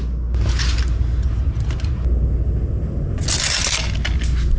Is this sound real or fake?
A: real